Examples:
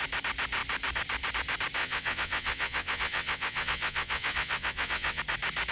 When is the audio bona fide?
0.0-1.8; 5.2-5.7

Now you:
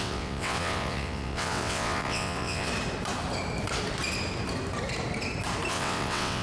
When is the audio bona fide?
2.7-5.7

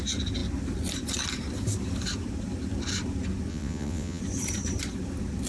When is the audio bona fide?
0.0-3.5; 4.2-5.5

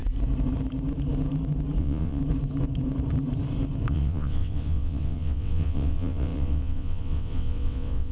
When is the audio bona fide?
0.0-1.8; 2.2-3.9

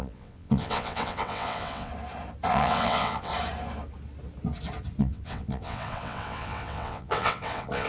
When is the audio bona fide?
1.9-2.5; 3.3-5.0

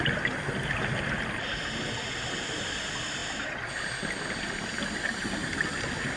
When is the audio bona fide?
0.0-6.2

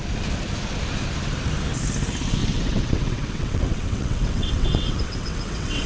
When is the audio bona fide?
0.0-2.4